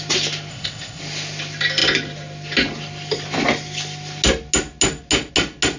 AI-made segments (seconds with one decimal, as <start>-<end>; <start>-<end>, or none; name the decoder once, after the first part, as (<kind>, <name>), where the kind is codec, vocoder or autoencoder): 0.5-1.0 (codec, ZipCodec)